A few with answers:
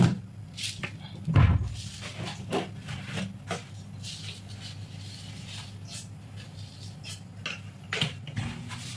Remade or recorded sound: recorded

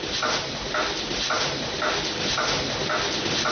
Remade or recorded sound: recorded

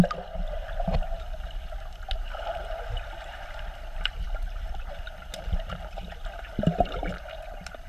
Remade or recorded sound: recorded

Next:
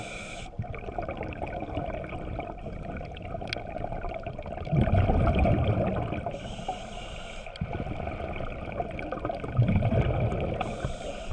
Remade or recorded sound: recorded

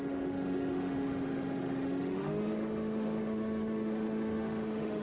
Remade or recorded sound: remade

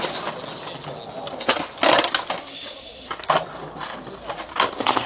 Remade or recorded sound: recorded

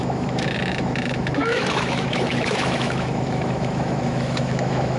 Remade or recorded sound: remade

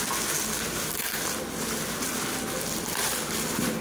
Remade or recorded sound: recorded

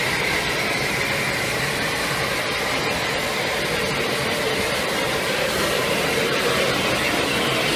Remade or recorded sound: recorded